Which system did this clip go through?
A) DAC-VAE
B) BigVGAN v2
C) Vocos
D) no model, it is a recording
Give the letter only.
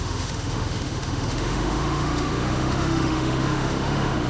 A